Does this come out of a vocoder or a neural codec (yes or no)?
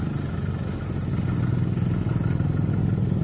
no